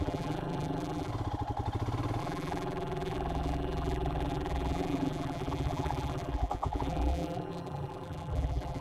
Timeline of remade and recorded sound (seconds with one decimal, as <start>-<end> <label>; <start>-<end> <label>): 0.0-1.1 remade; 1.1-2.2 recorded; 2.2-8.8 remade